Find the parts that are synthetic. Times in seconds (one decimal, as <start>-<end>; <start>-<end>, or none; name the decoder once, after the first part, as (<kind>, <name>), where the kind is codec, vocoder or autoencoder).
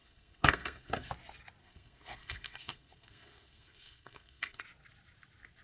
0.0-1.1 (codec, SNAC); 1.6-4.6